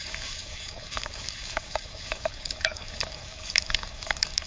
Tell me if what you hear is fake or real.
fake